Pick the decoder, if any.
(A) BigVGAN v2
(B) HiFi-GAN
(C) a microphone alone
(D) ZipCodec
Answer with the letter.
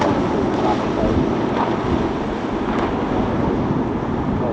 C